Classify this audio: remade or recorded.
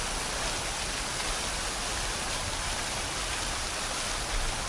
recorded